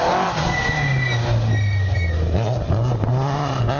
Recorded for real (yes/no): yes